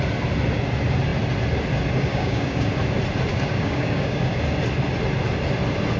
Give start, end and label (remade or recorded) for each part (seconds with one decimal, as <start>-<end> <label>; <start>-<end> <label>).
0.0-2.1 recorded; 2.1-2.7 remade; 2.7-3.3 recorded; 3.3-4.4 remade; 4.4-6.0 recorded